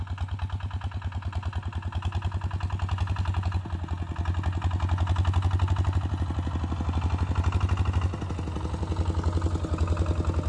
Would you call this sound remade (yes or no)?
no